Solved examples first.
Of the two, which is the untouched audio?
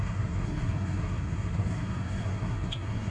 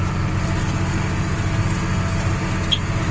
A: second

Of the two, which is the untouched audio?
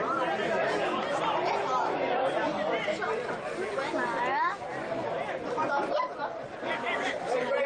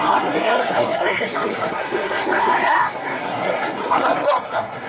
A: first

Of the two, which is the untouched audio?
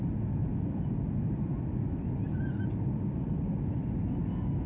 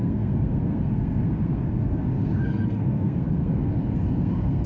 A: first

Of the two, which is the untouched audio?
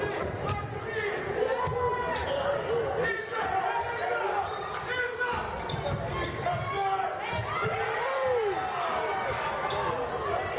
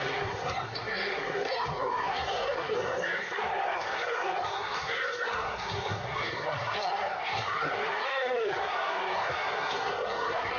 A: first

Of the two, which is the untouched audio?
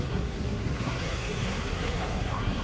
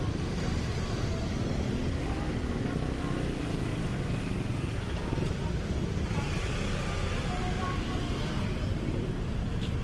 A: second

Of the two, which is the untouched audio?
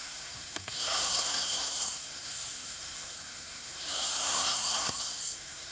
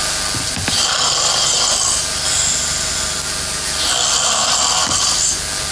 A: second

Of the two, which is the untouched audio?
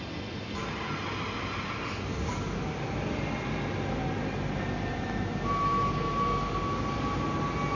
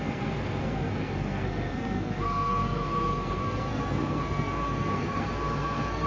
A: first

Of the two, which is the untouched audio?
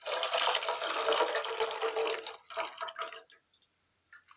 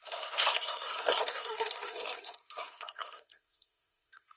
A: first